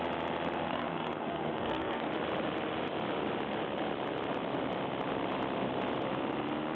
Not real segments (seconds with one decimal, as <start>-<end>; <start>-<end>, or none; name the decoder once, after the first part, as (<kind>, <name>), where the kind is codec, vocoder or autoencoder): 0.7-2.1 (codec, SNAC)